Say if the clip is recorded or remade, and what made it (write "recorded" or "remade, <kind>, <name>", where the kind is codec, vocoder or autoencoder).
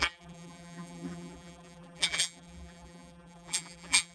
remade, vocoder, BigVGAN v2